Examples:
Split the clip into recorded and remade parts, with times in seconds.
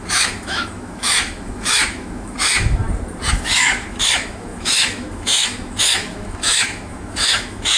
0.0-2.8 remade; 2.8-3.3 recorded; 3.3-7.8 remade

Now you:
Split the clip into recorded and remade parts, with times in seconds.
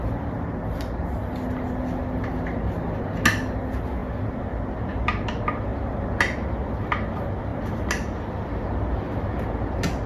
0.0-10.1 recorded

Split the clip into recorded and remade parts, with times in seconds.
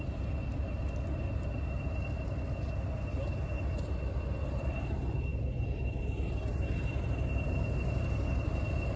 0.0-9.0 recorded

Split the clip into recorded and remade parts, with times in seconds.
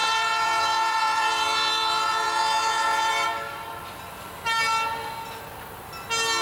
0.0-3.1 remade; 3.1-6.4 recorded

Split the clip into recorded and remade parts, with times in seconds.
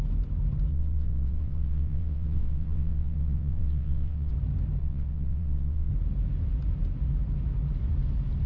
0.0-0.7 recorded; 0.7-4.3 remade; 4.3-4.8 recorded; 4.8-5.9 remade; 5.9-8.5 recorded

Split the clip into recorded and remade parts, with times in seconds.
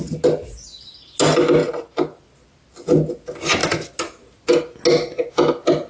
0.0-5.9 recorded